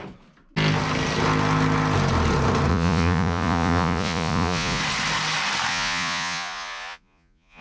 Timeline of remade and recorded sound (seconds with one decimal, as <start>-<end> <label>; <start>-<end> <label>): 0.0-2.7 recorded; 2.7-4.8 remade; 4.8-5.7 recorded; 5.7-7.6 remade